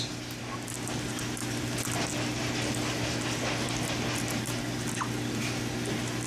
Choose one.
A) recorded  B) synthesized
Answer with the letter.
A